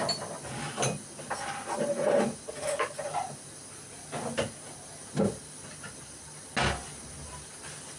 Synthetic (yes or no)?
no